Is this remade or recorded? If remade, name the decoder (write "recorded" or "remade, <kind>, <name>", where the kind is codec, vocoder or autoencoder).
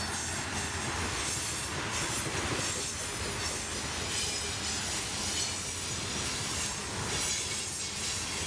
recorded